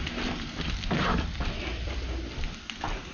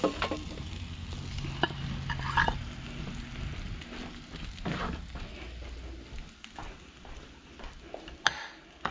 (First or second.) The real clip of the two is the second